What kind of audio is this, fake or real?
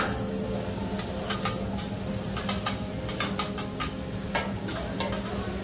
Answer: real